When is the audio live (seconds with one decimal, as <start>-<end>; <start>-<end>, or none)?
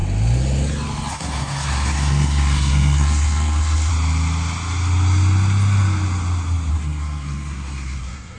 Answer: 0.0-1.1; 3.9-6.7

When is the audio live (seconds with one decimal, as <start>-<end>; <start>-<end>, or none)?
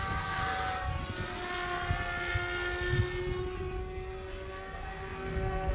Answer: 0.4-3.8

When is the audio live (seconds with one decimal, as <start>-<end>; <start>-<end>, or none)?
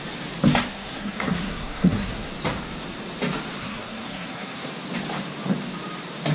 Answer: 0.0-0.7; 2.3-3.6; 4.7-6.3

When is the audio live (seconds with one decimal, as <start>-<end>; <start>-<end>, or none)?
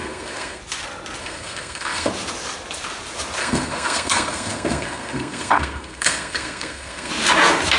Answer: 0.6-1.2; 2.1-3.4; 7.1-7.8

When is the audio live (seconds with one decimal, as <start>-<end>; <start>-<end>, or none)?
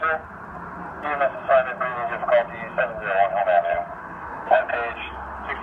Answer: 0.0-4.0; 4.6-5.6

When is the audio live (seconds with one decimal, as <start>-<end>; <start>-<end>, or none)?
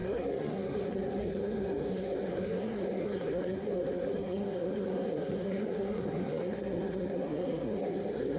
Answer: none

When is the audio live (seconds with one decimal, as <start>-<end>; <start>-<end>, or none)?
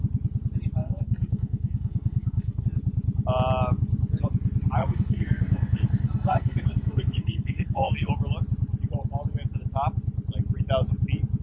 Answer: 0.0-0.8; 2.6-4.8; 8.1-11.4